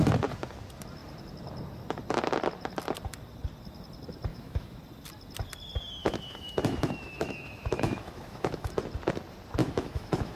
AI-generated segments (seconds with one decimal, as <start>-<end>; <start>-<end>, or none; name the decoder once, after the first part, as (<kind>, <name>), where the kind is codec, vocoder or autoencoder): 4.3-4.8 (autoencoder, DAC-VAE); 6.0-8.7; 9.6-10.4